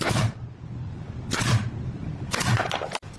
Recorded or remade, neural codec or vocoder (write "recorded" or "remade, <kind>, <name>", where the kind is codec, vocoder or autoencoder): recorded